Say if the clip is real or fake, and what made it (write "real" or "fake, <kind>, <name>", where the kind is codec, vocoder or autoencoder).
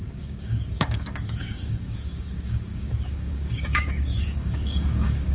fake, codec, DAC